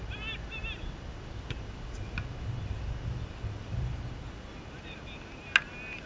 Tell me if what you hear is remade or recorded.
recorded